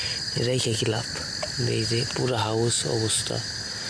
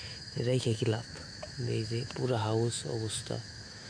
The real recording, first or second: first